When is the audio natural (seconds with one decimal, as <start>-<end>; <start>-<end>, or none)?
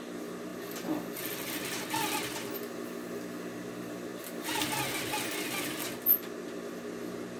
0.0-0.5; 1.6-7.4